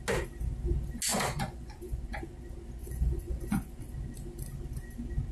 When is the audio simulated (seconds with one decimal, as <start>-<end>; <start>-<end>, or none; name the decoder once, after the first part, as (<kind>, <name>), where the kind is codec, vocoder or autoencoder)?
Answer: 1.1-2.2 (vocoder, Vocos); 2.8-3.8